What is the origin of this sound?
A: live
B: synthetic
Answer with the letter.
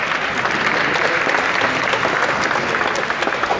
A